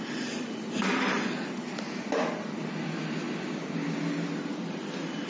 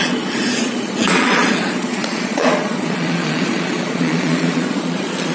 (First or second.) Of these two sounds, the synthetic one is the second